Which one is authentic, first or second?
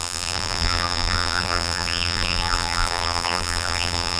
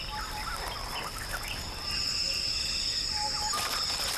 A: second